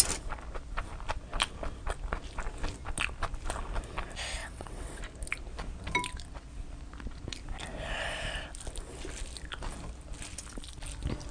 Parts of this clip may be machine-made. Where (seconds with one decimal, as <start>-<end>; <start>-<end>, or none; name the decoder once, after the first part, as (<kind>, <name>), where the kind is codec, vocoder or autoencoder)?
4.4-5.0 (vocoder, WaveNeXt)